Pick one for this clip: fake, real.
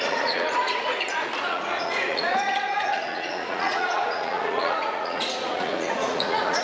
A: fake